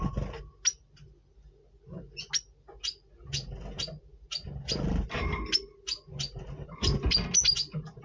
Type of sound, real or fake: real